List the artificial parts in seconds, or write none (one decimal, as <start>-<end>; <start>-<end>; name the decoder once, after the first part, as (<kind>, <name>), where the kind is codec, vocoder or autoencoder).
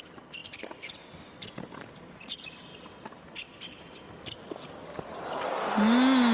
none